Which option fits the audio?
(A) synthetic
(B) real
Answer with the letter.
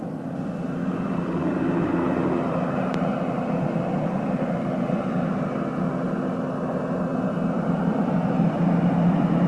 B